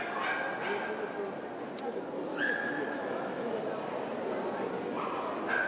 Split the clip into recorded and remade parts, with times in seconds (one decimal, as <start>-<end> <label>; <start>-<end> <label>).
0.0-2.3 recorded; 2.3-3.6 remade; 3.6-5.7 recorded